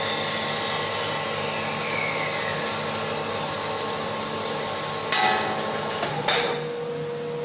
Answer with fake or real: real